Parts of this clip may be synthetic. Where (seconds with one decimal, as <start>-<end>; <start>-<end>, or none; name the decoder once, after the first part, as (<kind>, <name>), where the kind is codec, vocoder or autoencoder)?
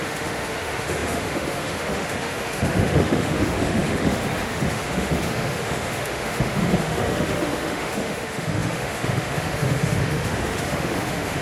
0.0-11.4 (autoencoder, DAC-VAE)